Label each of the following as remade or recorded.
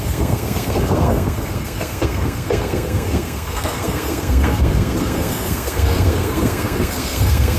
remade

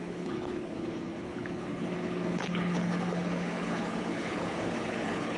remade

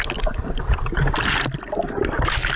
recorded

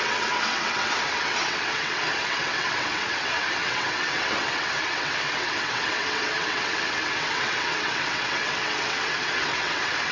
remade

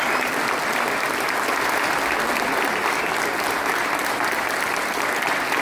recorded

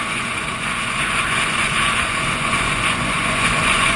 remade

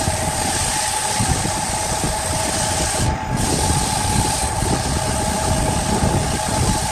recorded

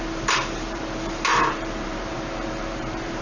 remade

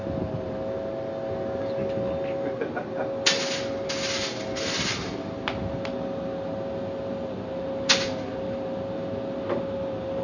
recorded